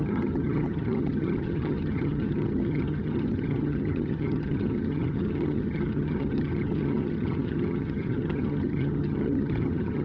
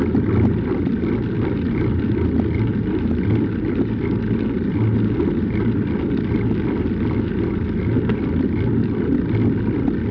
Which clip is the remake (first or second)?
first